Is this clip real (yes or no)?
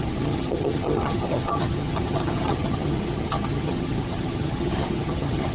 no